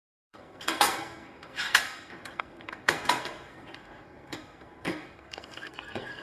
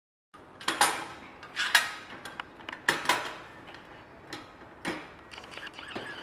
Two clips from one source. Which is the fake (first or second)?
first